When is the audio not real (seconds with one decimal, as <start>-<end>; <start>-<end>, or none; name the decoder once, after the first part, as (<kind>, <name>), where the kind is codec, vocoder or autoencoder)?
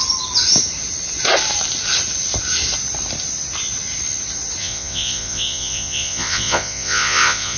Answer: 4.6-7.6 (vocoder, Vocos)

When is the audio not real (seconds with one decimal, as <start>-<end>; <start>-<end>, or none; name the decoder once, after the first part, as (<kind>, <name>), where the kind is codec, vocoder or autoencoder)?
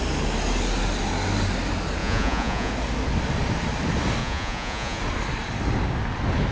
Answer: 2.0-2.7 (vocoder, Vocos); 4.2-5.0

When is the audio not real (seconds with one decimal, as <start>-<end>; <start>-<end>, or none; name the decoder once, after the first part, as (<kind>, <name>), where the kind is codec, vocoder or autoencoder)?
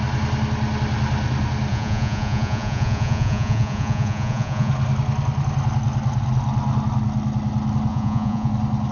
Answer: 1.7-4.7 (vocoder, Vocos); 7.9-8.5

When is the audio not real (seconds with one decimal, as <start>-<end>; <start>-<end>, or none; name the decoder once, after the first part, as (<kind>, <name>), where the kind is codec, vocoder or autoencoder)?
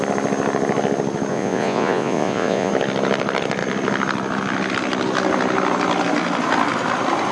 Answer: 1.3-2.7 (vocoder, Vocos)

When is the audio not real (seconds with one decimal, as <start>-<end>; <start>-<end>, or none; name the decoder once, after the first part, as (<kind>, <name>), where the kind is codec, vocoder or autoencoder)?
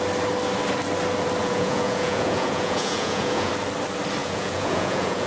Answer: 1.4-3.5 (vocoder, Vocos); 4.2-5.3